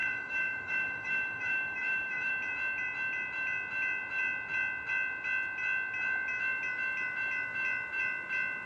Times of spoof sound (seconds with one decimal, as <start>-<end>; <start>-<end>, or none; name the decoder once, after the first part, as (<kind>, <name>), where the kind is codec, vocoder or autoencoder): 0.0-2.3 (autoencoder, DAC-VAE)